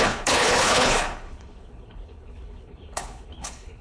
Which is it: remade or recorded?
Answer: remade